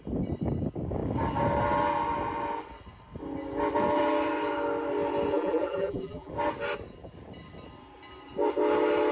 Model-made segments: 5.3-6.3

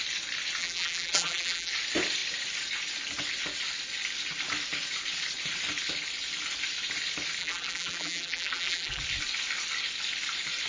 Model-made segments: 0.6-1.7; 7.4-9.0

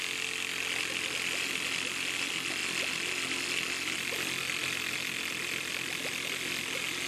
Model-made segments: none

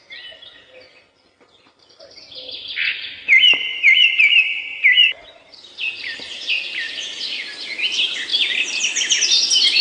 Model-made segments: 3.7-7.2

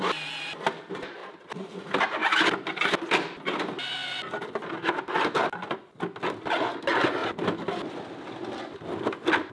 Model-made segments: none

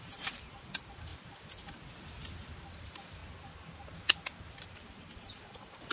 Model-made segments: 0.0-1.1; 2.7-3.2; 4.6-5.9

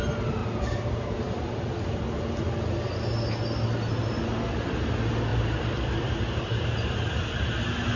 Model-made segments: 0.4-1.0; 5.3-6.8

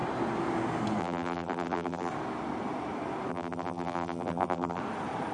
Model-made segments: 1.0-2.1; 3.3-4.8